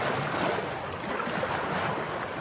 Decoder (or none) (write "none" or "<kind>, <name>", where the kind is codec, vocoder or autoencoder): none